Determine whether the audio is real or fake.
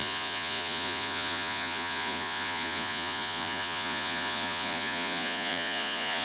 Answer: fake